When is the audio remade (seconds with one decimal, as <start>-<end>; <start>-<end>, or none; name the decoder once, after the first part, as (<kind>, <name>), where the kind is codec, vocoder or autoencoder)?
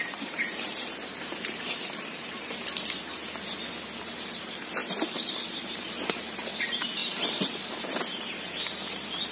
0.0-3.2 (vocoder, BigVGAN v2); 4.0-9.3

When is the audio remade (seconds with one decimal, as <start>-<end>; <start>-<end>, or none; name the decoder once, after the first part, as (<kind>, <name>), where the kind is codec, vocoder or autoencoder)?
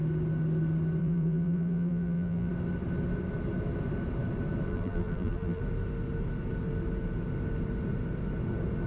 1.0-2.5 (vocoder, BigVGAN v2); 4.7-5.6